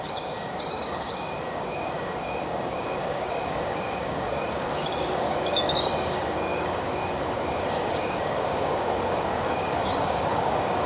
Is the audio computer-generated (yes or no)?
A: yes